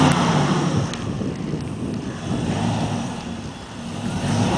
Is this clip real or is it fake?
real